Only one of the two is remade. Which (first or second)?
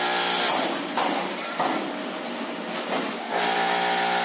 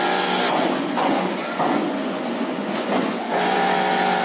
second